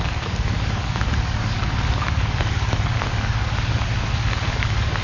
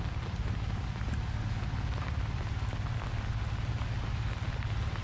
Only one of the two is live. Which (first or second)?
second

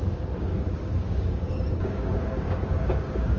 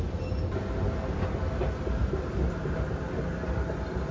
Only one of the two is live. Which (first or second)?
second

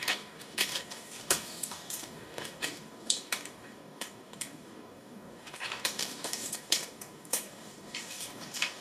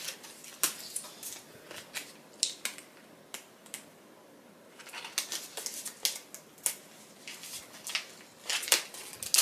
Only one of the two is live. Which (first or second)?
second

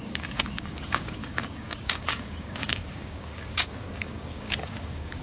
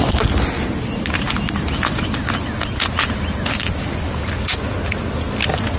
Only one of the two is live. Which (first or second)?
second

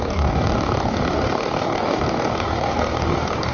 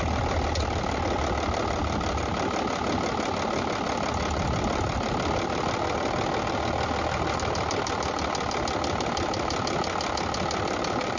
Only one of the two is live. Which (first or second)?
second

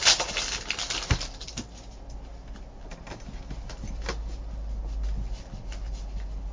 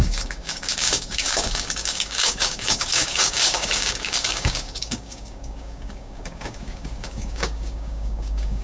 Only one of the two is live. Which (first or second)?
first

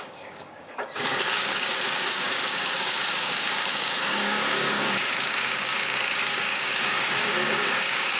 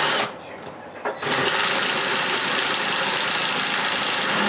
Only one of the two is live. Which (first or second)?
second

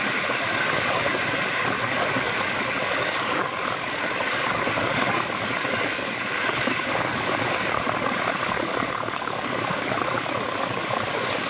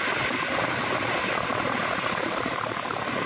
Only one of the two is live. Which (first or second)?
second